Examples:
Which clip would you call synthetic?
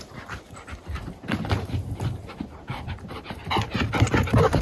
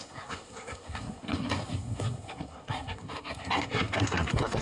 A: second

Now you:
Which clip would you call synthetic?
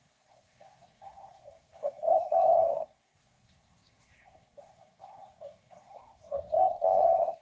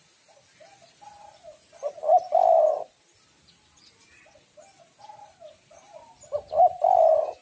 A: first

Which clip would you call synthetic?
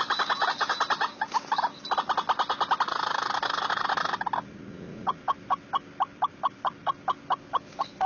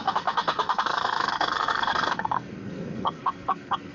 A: second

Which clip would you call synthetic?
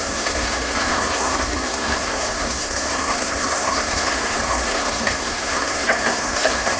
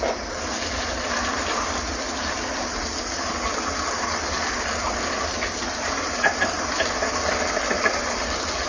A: first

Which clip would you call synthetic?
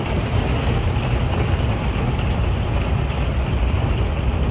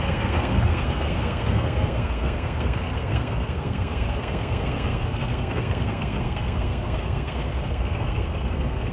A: second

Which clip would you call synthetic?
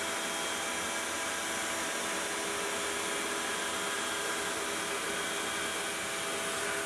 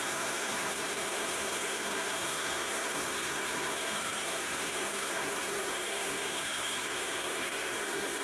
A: second